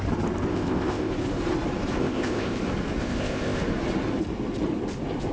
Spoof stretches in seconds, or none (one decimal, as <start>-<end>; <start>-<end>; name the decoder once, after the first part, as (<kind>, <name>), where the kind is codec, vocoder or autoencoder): 0.5-1.1 (codec, ZipCodec); 2.0-2.6; 3.0-3.6